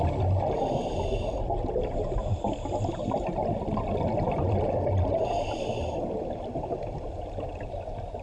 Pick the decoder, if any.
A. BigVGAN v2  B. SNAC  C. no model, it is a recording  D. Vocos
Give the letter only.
C